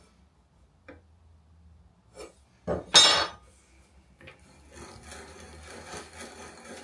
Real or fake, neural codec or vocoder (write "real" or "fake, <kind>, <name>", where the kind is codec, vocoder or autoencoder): real